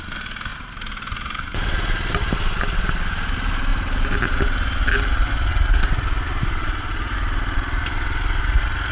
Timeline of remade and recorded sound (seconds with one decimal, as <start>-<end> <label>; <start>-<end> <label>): 0.0-8.9 recorded